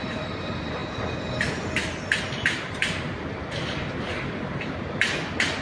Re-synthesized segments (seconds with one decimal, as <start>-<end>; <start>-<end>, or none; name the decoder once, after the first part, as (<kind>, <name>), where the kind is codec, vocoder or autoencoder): 0.0-0.8 (vocoder, BigVGAN v2); 2.2-4.1; 4.6-5.6